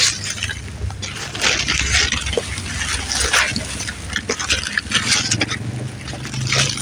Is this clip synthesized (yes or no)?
no